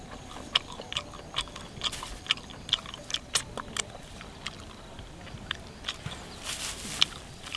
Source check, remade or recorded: recorded